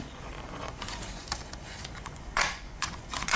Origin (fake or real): fake